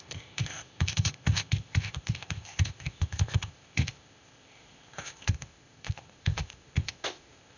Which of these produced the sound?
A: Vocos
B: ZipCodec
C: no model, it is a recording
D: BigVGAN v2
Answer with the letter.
B